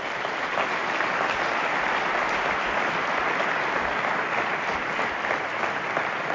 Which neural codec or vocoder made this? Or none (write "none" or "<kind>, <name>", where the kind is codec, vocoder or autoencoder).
none